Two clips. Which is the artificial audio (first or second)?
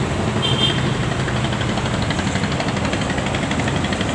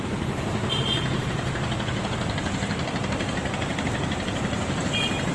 second